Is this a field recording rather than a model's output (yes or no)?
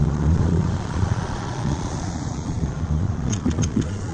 no